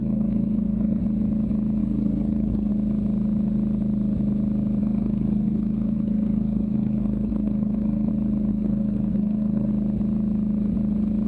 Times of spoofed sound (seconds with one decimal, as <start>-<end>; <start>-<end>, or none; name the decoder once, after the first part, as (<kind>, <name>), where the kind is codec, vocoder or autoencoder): 0.0-1.0 (codec, SNAC); 1.8-2.7; 4.8-8.1; 8.5-9.7